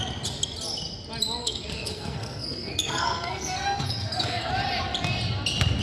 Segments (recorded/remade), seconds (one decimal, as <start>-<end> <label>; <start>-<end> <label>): 0.0-1.4 recorded; 1.4-4.5 remade; 4.5-5.8 recorded